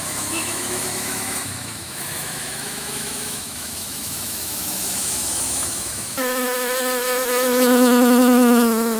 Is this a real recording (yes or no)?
no